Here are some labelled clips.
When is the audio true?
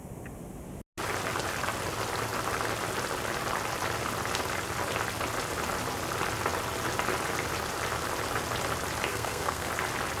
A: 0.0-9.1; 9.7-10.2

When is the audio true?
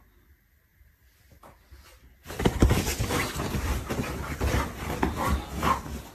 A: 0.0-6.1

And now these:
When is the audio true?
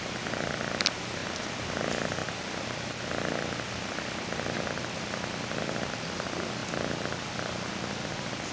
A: 0.0-8.5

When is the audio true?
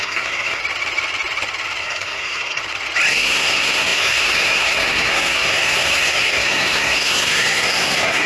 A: 0.6-1.8; 2.6-3.1